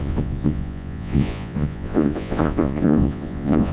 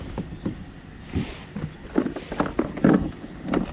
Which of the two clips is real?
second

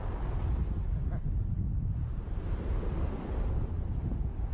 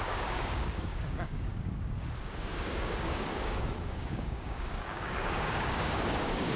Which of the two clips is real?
first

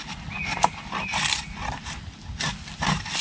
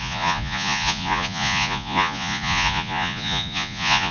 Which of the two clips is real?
first